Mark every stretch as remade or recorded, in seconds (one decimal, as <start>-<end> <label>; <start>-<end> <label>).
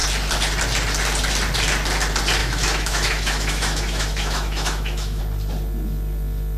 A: 0.0-2.4 recorded; 2.4-5.2 remade; 5.2-6.6 recorded